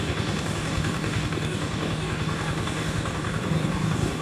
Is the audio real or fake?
fake